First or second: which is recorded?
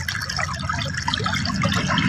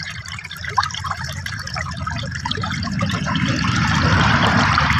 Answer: first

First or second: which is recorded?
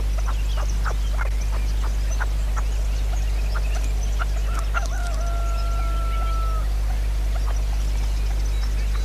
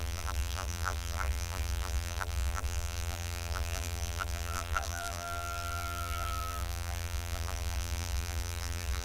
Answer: first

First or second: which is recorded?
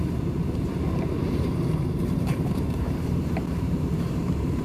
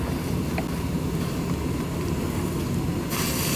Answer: second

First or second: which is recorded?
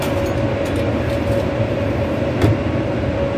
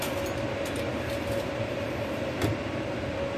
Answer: first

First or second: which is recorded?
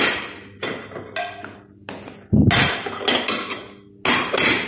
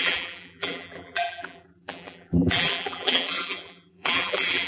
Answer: first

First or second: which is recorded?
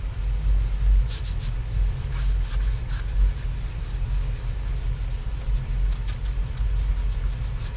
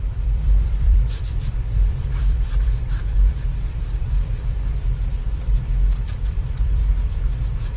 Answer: first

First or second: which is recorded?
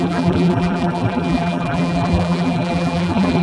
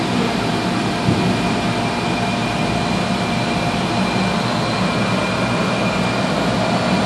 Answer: second